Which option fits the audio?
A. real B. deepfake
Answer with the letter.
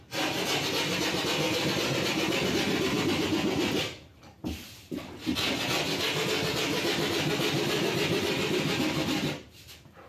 A